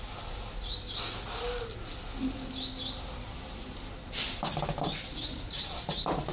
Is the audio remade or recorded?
recorded